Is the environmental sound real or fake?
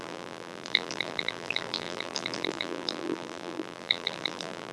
fake